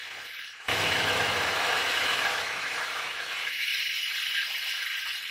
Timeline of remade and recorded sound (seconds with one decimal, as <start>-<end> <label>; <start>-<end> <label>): 0.0-0.6 recorded; 0.6-3.7 remade; 3.7-5.3 recorded